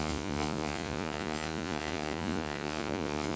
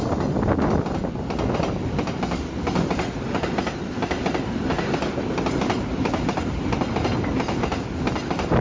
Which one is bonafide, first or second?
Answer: second